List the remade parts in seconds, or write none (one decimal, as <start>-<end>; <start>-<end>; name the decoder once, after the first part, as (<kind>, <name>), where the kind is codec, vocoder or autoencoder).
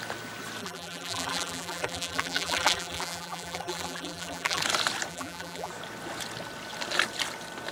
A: 0.6-4.6 (vocoder, BigVGAN v2); 5.1-5.7